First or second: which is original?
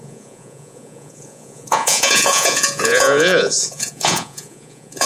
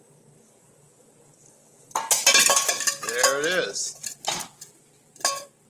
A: second